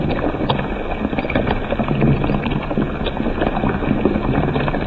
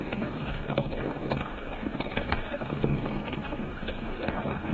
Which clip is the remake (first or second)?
second